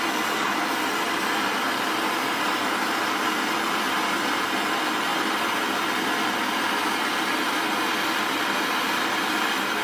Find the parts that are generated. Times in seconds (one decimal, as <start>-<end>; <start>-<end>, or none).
none